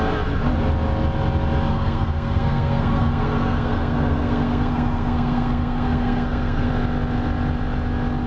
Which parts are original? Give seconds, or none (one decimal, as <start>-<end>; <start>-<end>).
0.0-1.7; 6.7-8.3